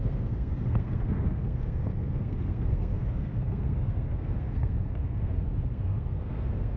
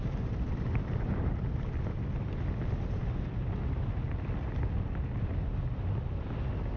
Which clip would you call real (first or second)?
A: second